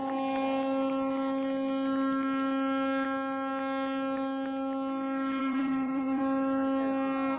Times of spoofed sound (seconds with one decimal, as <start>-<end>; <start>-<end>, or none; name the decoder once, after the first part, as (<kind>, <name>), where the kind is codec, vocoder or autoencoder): 5.4-6.2 (vocoder, HiFi-GAN)